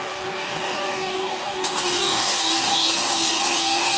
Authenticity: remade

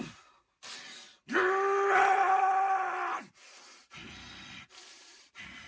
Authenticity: recorded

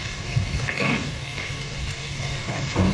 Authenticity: remade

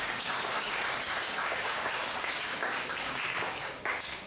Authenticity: remade